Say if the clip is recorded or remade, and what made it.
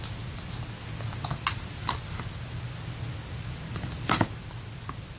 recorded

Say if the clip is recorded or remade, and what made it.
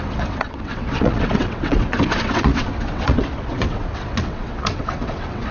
remade, vocoder, WaveNeXt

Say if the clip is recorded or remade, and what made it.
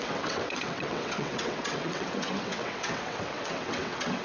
remade, vocoder, WaveNeXt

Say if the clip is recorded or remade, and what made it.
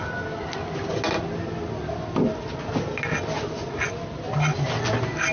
recorded